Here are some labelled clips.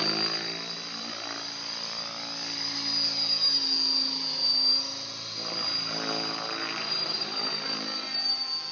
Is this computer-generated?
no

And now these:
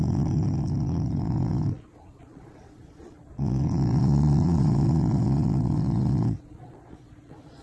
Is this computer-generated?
yes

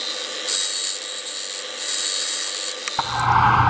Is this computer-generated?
no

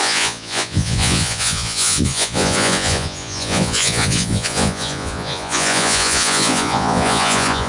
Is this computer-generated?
yes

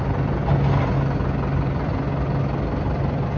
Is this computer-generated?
no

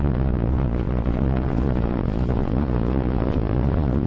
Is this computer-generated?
yes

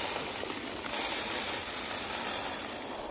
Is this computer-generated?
no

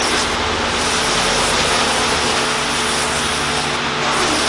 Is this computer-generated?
no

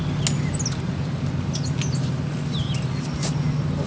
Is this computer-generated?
no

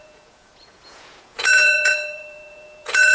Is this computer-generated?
yes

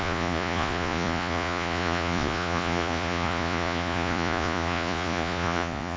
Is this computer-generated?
yes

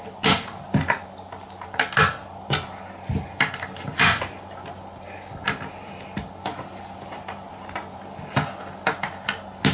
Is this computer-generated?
no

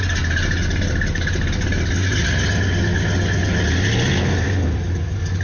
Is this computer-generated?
no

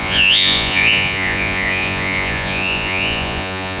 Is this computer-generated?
yes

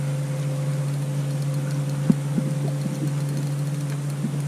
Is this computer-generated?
no